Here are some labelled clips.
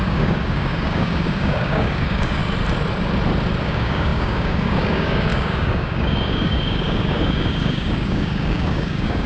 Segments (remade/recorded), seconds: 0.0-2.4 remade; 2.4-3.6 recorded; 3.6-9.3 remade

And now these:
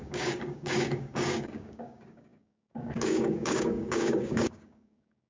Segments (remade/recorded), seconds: 0.0-5.3 remade

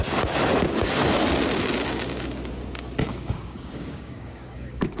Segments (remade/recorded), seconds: 0.0-3.0 recorded; 3.0-5.0 remade

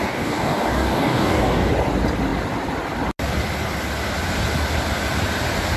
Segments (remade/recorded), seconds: 0.0-1.7 remade; 1.7-5.8 recorded